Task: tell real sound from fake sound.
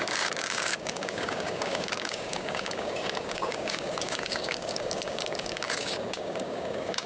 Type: fake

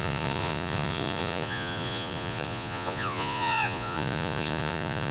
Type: fake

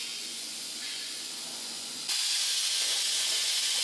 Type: fake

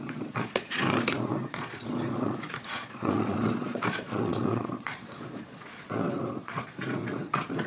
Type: fake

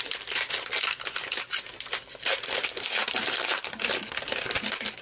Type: real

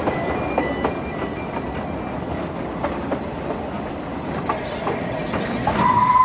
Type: real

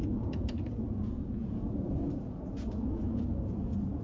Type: fake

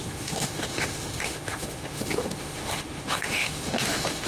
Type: fake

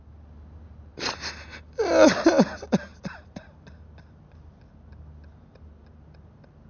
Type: real